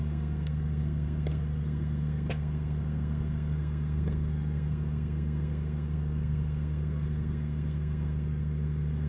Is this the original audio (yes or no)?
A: no